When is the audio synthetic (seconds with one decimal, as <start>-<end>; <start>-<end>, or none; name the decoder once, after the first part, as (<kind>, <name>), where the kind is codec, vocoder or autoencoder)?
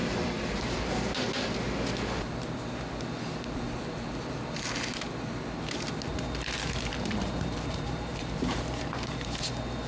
6.9-9.3 (vocoder, BigVGAN v2)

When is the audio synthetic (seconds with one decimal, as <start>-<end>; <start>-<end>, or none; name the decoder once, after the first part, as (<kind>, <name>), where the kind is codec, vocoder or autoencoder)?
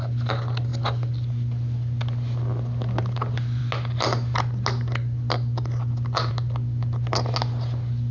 none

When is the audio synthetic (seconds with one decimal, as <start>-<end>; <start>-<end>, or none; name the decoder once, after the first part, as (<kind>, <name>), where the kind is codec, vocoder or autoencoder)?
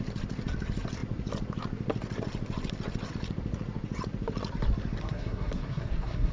5.0-6.3 (codec, SNAC)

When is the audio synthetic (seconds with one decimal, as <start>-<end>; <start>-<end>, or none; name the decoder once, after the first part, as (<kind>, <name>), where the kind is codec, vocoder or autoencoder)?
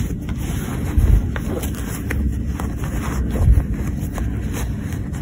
none